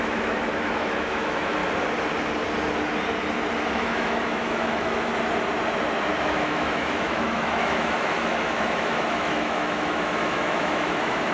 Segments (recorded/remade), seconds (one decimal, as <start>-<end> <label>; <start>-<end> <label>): 0.0-1.6 remade; 1.6-3.7 recorded; 3.7-5.1 remade; 5.1-6.2 recorded; 6.2-11.3 remade